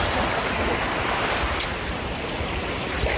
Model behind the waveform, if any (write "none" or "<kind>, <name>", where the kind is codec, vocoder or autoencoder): none